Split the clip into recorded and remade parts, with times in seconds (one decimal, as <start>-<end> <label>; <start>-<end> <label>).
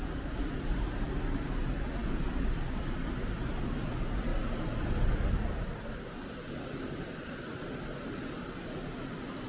0.0-9.5 recorded